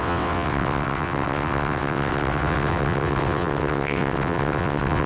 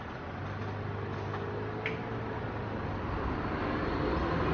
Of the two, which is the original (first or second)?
second